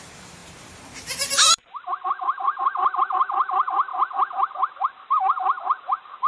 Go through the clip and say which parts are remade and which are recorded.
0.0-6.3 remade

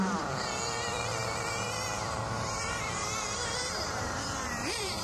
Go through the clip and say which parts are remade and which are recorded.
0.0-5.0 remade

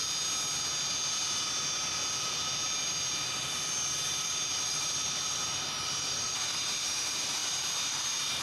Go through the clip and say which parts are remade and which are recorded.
0.0-4.0 recorded; 4.0-8.4 remade

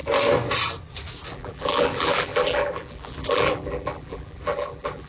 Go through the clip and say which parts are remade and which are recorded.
0.0-1.3 recorded; 1.3-5.1 remade

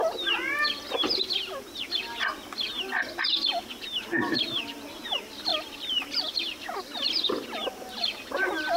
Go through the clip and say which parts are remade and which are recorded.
0.0-8.8 recorded

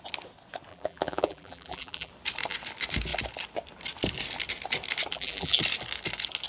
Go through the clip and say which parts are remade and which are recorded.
0.0-0.7 recorded; 0.7-2.1 remade; 2.1-5.1 recorded; 5.1-5.6 remade; 5.6-6.5 recorded